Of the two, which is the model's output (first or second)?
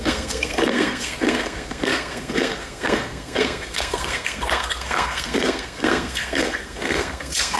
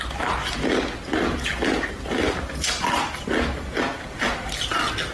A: first